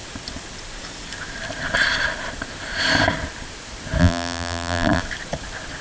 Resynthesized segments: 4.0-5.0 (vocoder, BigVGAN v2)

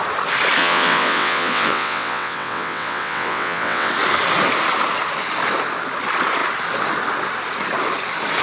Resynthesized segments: 0.6-3.9 (vocoder, WaveNeXt)